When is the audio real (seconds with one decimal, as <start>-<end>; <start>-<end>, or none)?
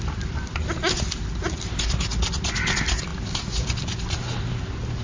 0.0-5.0